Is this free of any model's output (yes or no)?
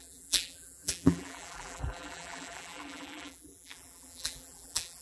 no